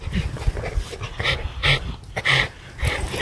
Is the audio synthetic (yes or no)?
no